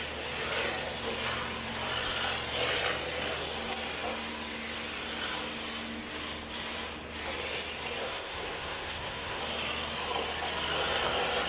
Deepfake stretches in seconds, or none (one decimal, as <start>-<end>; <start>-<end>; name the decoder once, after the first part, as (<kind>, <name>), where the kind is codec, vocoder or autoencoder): 8.0-9.4 (codec, SNAC)